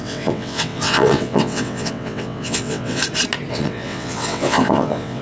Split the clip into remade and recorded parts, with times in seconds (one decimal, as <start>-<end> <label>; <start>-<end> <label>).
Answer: 0.0-3.0 remade; 3.0-3.5 recorded; 3.5-5.2 remade